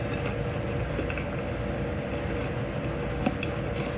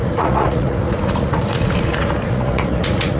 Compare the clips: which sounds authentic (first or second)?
first